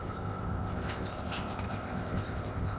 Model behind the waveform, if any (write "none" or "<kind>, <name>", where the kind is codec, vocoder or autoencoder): codec, ZipCodec